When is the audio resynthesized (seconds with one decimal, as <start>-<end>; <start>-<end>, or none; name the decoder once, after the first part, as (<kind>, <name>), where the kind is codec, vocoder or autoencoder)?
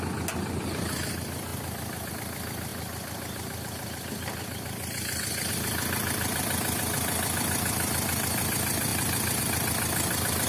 none